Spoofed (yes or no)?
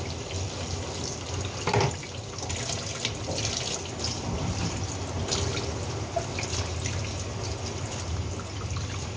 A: no